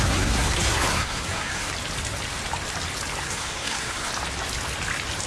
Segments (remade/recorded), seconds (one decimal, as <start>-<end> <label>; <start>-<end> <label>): 0.0-1.7 remade; 1.7-3.2 recorded; 3.2-4.1 remade; 4.1-5.3 recorded

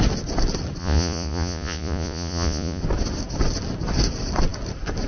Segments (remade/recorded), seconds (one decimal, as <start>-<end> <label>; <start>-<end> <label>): 0.0-0.8 recorded; 0.8-2.8 remade; 2.8-5.1 recorded

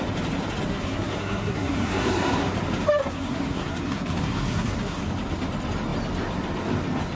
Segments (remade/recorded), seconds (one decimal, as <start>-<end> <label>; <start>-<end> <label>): 0.0-0.7 recorded; 0.7-2.5 remade; 2.5-3.0 recorded; 3.0-5.1 remade; 5.1-7.2 recorded

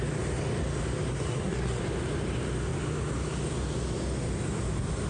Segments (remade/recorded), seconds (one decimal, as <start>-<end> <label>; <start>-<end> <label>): 0.0-1.1 recorded; 1.1-1.8 remade; 1.8-5.1 recorded